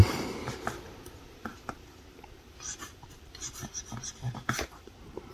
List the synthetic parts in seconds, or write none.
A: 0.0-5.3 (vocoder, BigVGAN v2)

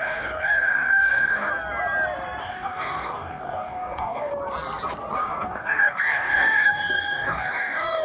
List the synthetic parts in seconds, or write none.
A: 0.0-1.5 (codec, DAC); 2.4-4.3; 5.2-8.0

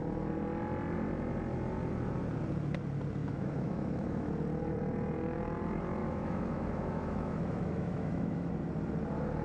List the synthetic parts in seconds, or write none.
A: 3.2-4.3 (autoencoder, DAC-VAE); 6.0-8.5